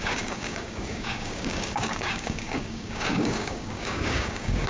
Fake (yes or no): yes